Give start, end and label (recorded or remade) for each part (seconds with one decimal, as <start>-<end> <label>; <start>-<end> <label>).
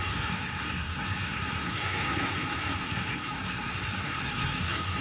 0.0-5.0 remade